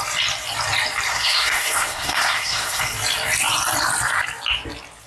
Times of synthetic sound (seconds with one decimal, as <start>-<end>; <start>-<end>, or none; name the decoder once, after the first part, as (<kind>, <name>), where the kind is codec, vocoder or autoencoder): 1.1-2.8 (codec, SNAC)

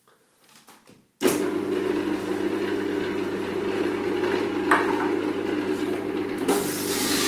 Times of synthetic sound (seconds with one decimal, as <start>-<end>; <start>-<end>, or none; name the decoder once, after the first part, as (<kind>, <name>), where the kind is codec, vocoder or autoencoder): none

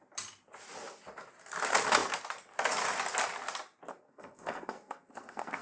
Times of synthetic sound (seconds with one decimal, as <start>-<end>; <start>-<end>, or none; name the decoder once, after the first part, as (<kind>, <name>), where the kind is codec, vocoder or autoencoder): 3.9-5.6 (codec, SNAC)

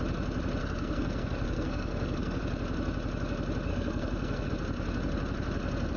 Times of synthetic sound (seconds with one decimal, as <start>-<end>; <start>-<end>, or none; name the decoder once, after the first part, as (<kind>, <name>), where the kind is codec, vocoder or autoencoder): 0.6-2.4 (codec, SNAC); 3.7-4.5

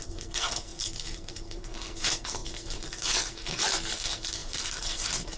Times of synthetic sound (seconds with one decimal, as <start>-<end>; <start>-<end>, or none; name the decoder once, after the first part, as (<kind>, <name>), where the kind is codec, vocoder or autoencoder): 0.0-5.4 (codec, SNAC)